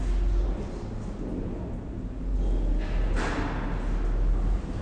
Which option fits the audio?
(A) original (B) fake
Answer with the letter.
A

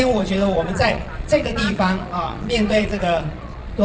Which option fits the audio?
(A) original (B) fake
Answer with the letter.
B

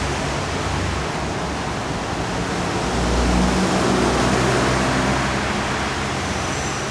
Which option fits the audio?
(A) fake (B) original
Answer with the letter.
B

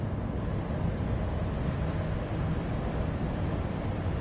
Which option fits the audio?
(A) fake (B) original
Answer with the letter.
B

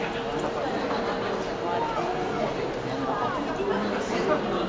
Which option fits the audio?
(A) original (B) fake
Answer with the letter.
A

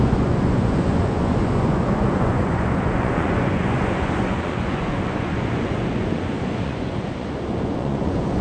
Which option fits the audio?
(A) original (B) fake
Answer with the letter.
B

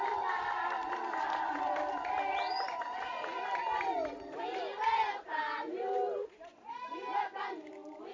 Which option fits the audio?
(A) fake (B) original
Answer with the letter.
B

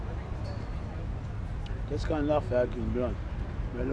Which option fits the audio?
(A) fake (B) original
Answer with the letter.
B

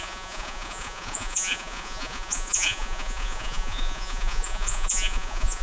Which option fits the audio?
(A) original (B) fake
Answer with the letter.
B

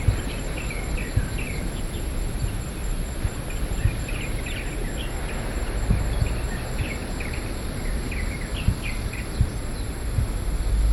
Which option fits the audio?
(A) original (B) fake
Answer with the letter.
A